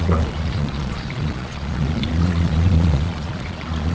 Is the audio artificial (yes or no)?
yes